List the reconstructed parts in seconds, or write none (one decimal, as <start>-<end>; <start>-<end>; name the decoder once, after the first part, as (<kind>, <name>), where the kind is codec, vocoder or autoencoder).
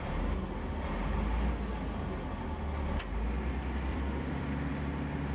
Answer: 3.9-4.7 (vocoder, BigVGAN v2)